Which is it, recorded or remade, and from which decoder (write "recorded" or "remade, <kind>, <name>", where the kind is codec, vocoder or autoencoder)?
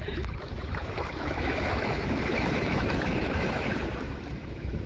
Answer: remade, autoencoder, DAC-VAE